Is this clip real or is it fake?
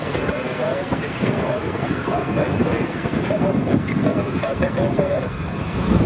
fake